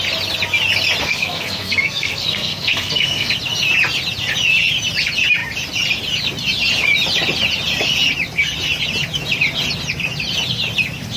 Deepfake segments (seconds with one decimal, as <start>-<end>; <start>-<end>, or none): 1.0-3.3